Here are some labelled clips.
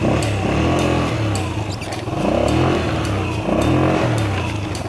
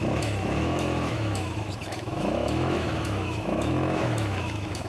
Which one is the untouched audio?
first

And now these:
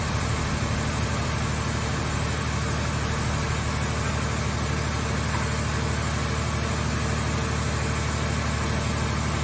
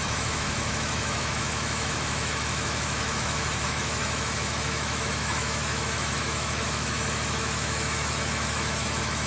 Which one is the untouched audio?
first